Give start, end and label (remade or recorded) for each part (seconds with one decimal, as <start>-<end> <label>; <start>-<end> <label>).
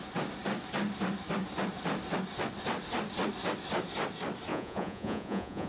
0.0-4.5 recorded; 4.5-5.7 remade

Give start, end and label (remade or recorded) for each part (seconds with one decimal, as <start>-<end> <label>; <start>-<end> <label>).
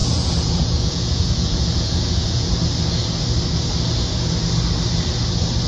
0.0-2.5 remade; 2.5-5.7 recorded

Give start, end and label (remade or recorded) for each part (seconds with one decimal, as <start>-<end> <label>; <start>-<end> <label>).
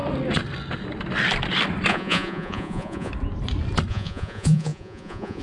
0.0-1.9 recorded; 1.9-3.1 remade; 3.1-3.9 recorded; 3.9-5.4 remade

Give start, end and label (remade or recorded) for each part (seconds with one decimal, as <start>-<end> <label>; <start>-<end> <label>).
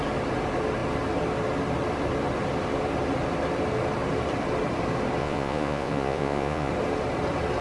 0.0-5.2 recorded; 5.2-6.7 remade; 6.7-7.6 recorded